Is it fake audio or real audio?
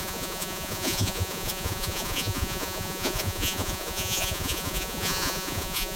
fake